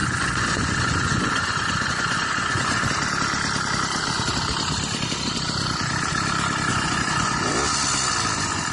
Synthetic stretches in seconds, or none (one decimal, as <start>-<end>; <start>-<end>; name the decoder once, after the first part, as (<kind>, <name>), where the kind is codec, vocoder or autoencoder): 0.0-2.9 (vocoder, Vocos); 6.7-7.5